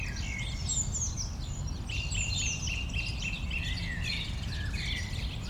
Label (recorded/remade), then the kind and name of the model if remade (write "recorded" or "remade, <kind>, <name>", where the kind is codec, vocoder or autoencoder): recorded